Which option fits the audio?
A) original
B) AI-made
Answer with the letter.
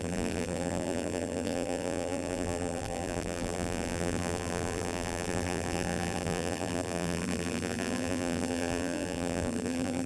B